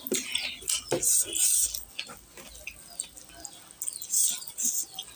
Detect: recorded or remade recorded